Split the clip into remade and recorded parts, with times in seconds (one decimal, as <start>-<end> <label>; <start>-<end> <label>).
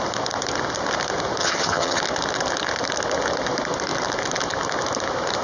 0.0-1.4 recorded; 1.4-2.0 remade; 2.0-5.4 recorded